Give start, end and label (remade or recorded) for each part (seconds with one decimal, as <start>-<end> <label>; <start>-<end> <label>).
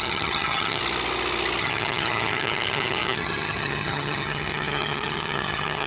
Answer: 0.0-0.8 remade; 0.8-1.6 recorded; 1.6-5.9 remade